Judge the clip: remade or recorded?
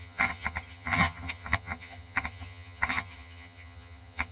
remade